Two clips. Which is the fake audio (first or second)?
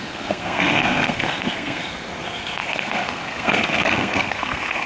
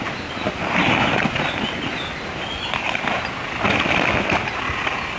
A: first